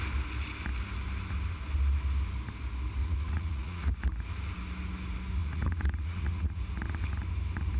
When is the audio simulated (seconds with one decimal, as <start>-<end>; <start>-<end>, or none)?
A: 3.0-3.9; 5.4-6.6